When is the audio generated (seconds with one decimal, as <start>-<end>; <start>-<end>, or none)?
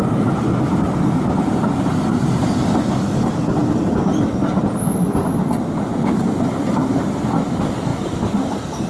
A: none